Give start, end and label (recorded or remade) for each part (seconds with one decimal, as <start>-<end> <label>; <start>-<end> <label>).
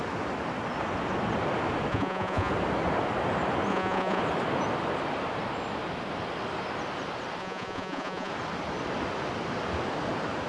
0.0-1.9 recorded; 1.9-2.5 remade; 2.5-3.7 recorded; 3.7-4.2 remade; 4.2-7.4 recorded; 7.4-8.3 remade; 8.3-10.5 recorded